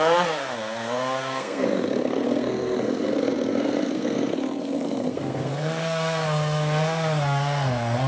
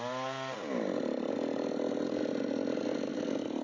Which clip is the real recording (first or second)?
second